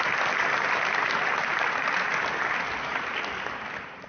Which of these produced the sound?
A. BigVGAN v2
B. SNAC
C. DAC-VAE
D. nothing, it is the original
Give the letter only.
D